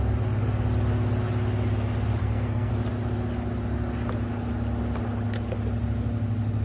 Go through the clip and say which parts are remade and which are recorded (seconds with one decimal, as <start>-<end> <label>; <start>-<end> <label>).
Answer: 0.0-2.2 recorded; 2.2-2.7 remade; 2.7-6.6 recorded